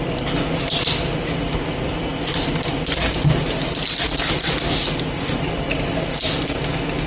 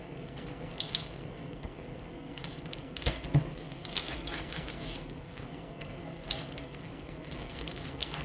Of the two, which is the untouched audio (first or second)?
first